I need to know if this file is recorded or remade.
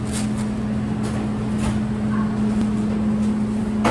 recorded